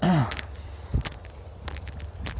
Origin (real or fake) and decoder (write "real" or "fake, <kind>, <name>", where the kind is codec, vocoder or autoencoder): real